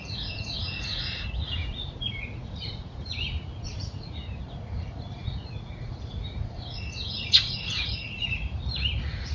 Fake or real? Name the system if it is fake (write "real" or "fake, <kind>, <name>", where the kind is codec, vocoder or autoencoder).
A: fake, vocoder, Vocos